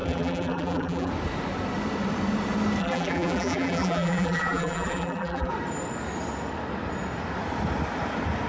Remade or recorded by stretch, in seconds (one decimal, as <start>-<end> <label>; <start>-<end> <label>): 0.0-1.1 remade; 1.1-2.8 recorded; 2.8-5.5 remade; 5.5-8.5 recorded